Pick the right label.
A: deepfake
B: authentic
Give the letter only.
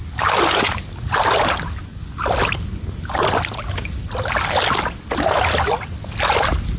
B